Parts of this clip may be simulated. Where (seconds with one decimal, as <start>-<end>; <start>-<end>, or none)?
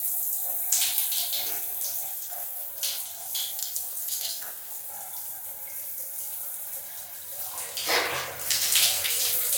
2.1-2.7; 3.6-4.9; 8.4-9.2